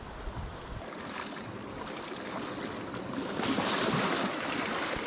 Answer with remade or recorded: recorded